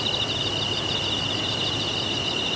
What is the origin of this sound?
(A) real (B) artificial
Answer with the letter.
A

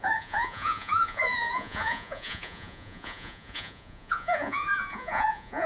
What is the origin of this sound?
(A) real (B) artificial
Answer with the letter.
B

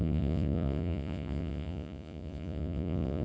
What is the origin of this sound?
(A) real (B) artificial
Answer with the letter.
B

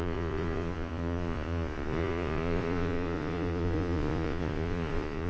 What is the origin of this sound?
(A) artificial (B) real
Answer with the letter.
A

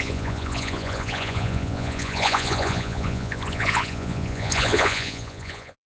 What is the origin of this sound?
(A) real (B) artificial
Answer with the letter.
B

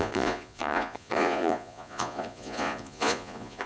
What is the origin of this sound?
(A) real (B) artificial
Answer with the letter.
B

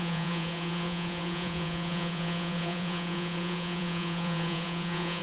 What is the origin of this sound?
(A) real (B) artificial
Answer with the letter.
B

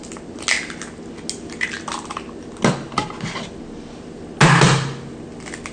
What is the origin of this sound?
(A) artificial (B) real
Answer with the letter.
B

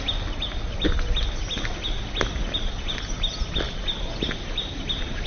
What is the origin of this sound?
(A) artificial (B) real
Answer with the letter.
B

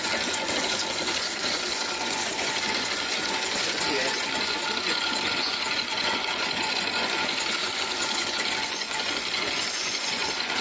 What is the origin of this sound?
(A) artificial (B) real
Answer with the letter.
A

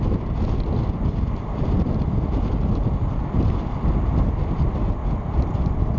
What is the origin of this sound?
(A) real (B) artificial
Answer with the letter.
A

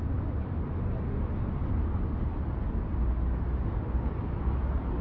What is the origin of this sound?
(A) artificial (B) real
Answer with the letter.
B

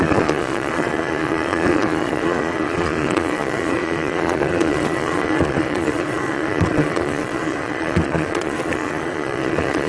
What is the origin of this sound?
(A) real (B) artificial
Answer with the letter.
B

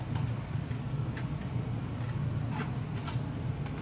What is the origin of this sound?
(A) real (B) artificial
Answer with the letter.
A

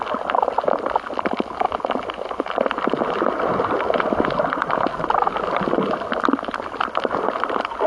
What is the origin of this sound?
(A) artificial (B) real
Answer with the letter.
B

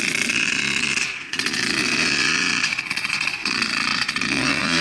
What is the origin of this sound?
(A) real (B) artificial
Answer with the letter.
B